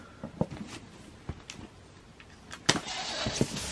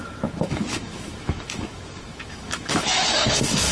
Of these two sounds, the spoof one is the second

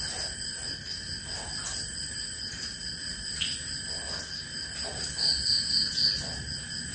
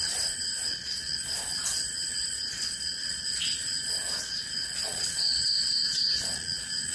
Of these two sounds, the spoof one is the second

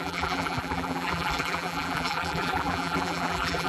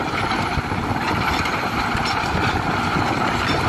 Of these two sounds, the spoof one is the first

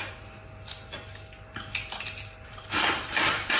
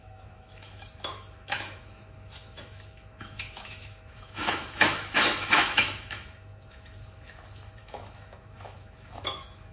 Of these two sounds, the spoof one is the second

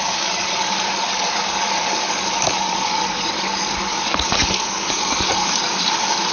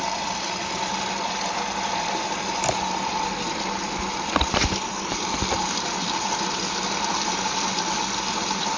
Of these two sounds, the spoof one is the first